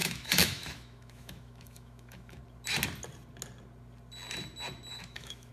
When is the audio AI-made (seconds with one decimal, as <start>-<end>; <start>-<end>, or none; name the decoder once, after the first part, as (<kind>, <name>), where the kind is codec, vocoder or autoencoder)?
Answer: 0.0-2.4 (autoencoder, DAC-VAE); 4.9-5.5